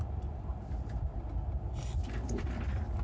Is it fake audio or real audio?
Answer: real